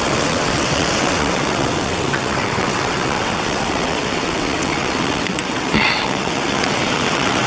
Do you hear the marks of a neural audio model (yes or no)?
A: yes